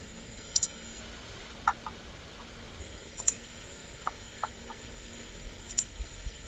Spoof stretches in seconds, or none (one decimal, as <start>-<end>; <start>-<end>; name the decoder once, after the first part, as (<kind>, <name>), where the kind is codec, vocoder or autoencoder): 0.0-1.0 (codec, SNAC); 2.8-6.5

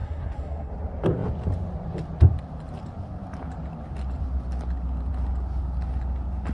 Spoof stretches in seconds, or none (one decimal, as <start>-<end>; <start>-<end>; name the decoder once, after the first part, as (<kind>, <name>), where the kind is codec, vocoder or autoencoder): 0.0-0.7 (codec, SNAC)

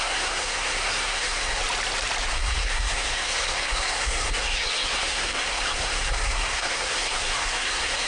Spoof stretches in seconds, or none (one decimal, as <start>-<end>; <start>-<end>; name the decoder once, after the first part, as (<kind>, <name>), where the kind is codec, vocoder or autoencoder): 0.0-1.6 (codec, SNAC); 2.3-8.1

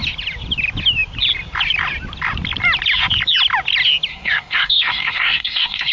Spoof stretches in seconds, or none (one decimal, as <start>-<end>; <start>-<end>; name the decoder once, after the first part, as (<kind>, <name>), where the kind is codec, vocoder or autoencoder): 4.1-5.9 (codec, SNAC)

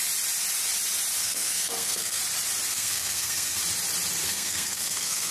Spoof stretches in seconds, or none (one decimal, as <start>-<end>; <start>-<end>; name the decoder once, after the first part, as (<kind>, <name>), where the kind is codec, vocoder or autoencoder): 1.2-2.2 (codec, SNAC); 2.7-3.6; 4.2-5.3